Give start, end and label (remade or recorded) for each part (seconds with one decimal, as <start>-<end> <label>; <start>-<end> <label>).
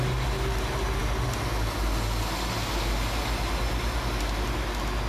0.0-5.1 recorded